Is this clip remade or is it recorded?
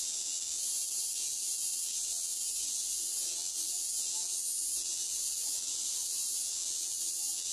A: remade